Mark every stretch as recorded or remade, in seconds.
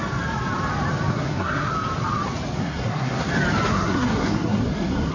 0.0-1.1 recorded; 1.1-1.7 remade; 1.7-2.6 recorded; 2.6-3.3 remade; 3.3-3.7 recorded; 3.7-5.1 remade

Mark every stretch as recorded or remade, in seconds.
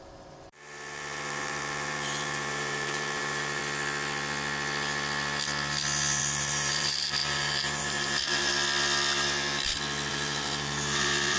0.0-3.6 remade; 3.6-6.2 recorded; 6.2-8.5 remade; 8.5-10.1 recorded; 10.1-11.4 remade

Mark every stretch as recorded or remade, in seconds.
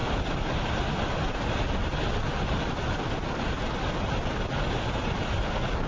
0.0-5.9 recorded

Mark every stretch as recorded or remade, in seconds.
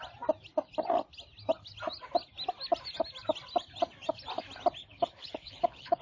0.0-4.8 recorded; 4.8-6.0 remade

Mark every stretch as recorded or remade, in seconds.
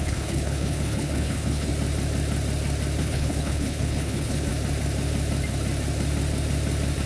0.0-1.7 remade; 1.7-3.0 recorded; 3.0-4.5 remade; 4.5-7.1 recorded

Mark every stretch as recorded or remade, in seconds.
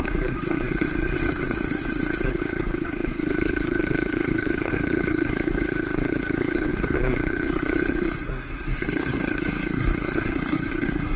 0.0-11.2 remade